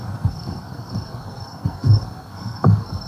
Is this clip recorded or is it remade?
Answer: remade